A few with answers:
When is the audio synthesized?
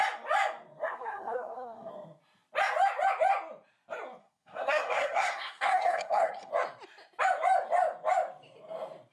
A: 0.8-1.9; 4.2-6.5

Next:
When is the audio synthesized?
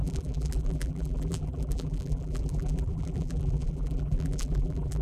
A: 0.0-5.0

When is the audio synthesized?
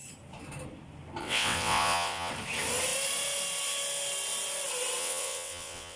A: 1.2-2.3; 5.0-6.0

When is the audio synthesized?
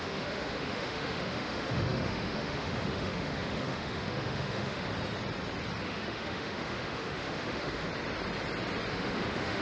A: 0.0-4.9; 5.8-7.9; 8.9-9.6